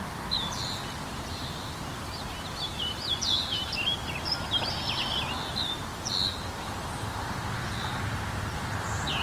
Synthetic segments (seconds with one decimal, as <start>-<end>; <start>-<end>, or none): none